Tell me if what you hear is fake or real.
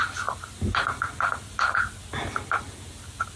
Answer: real